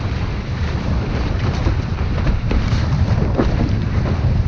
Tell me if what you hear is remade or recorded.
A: remade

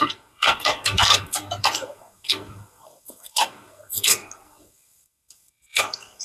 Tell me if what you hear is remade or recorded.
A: remade